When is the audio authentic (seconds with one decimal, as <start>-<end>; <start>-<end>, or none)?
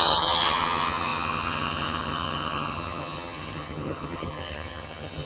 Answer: none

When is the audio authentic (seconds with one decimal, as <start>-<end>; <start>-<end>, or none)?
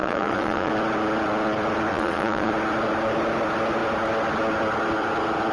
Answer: 0.7-1.9; 2.5-5.5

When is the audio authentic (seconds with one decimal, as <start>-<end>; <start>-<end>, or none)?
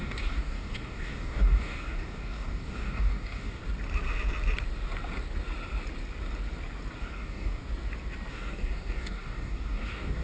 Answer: 3.6-7.0; 7.6-8.3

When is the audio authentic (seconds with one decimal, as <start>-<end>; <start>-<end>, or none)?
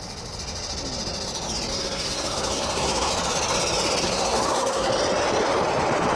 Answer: 0.0-1.7; 3.1-4.0; 4.9-6.2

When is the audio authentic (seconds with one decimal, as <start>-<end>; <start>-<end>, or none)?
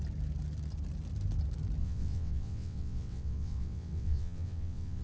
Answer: 0.0-1.8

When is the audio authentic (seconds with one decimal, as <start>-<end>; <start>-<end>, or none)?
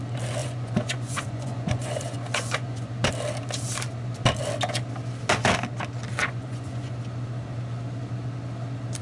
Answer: 0.0-0.4; 3.1-6.2; 6.9-9.0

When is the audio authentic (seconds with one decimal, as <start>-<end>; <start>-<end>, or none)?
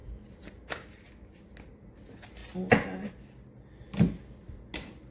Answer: 0.0-5.1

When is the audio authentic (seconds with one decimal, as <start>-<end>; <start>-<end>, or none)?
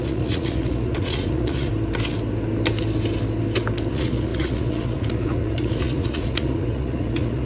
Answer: 1.7-3.9